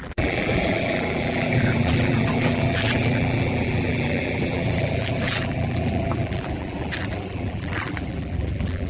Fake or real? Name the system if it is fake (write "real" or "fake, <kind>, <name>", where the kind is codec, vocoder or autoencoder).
fake, vocoder, BigVGAN v2